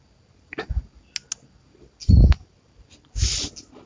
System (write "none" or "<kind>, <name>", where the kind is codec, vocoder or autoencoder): none